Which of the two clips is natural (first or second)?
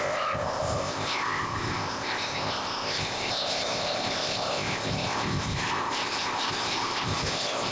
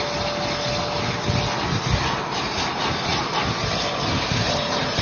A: second